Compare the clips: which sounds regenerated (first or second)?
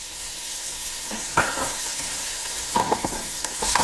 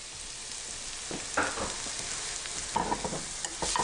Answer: first